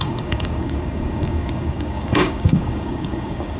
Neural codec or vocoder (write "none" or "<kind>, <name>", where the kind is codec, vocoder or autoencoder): codec, DAC